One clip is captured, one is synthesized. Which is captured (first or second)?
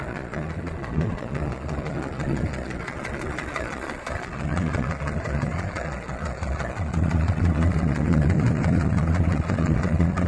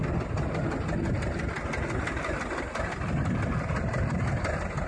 second